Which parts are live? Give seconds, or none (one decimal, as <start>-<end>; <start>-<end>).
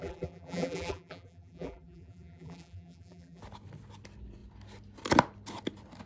3.4-6.1